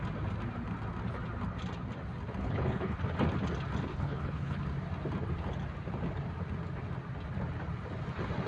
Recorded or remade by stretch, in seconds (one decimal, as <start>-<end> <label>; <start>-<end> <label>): 0.0-2.4 recorded; 2.4-3.0 remade; 3.0-3.9 recorded; 3.9-4.6 remade; 4.6-8.5 recorded